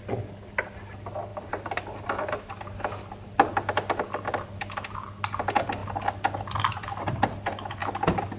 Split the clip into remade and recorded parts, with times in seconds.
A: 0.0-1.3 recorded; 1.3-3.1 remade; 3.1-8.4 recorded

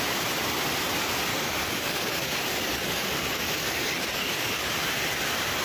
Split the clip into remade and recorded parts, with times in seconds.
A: 0.0-1.3 recorded; 1.3-4.7 remade; 4.7-5.6 recorded